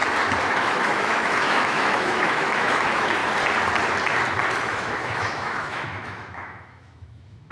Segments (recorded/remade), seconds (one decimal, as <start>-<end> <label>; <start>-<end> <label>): 0.0-0.5 recorded; 0.5-3.2 remade; 3.2-4.5 recorded; 4.5-7.5 remade